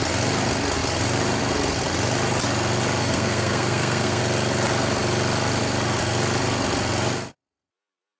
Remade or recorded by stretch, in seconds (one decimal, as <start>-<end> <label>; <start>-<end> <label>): 0.0-3.0 recorded; 3.0-4.2 remade; 4.2-8.2 recorded